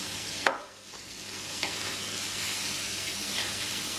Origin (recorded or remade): remade